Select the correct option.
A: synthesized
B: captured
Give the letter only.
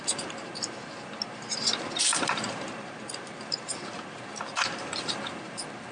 A